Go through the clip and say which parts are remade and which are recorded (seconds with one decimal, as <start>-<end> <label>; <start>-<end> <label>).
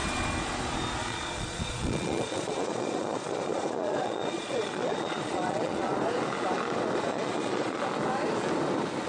0.0-1.0 recorded; 1.0-5.9 remade; 5.9-7.1 recorded; 7.1-7.8 remade; 7.8-9.1 recorded